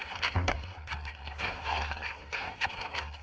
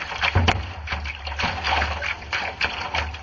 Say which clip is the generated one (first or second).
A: first